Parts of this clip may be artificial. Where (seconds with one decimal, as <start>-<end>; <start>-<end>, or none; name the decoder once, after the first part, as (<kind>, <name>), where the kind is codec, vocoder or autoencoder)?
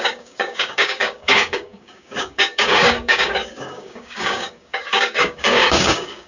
0.0-6.3 (codec, DAC)